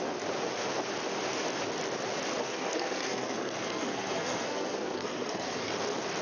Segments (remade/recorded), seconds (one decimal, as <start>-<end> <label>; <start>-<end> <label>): 0.0-2.4 recorded; 2.4-5.7 remade; 5.7-6.2 recorded